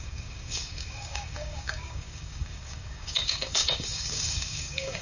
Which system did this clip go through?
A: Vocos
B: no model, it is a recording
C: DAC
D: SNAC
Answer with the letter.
C